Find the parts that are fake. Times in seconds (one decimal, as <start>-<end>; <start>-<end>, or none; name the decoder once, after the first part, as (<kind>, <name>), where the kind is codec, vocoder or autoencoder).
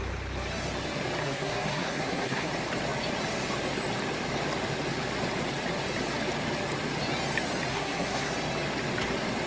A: 1.2-2.5 (codec, SNAC); 7.7-8.3